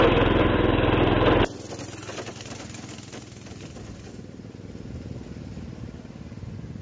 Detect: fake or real real